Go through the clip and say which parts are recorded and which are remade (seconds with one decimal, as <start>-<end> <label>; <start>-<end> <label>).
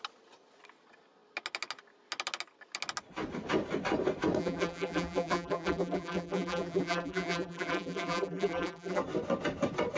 0.0-4.4 recorded; 4.4-9.0 remade; 9.0-10.0 recorded